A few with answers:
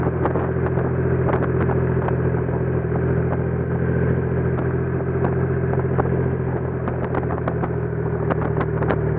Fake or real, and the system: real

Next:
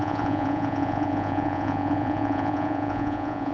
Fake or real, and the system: fake, vocoder, Vocos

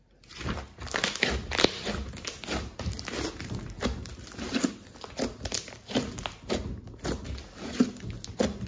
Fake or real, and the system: real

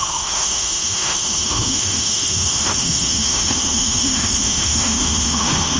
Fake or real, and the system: fake, autoencoder, DAC-VAE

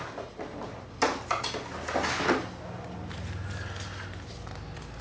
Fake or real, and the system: real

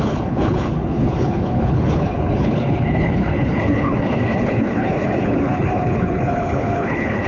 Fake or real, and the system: fake, codec, HILCodec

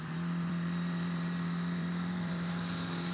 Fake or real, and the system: fake, vocoder, BigVGAN v2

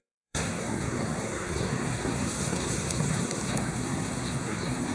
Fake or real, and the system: fake, codec, SNAC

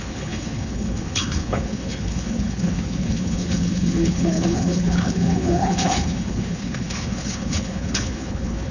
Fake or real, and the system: fake, codec, HILCodec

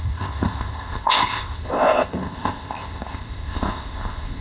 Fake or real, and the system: fake, codec, ZipCodec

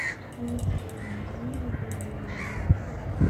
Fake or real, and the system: real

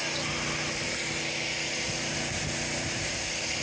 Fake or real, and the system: real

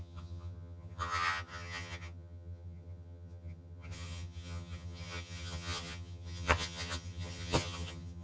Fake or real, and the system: fake, vocoder, HiFi-GAN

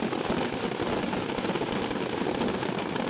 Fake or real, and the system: real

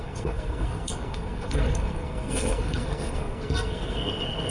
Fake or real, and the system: fake, codec, SNAC